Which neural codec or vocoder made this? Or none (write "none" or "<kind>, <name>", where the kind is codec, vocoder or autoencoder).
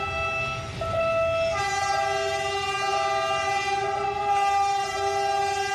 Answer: none